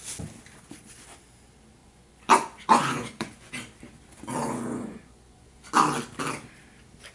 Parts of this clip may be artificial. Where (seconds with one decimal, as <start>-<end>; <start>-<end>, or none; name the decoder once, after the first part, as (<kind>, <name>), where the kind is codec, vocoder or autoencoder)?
1.8-3.5 (vocoder, Vocos); 4.4-5.6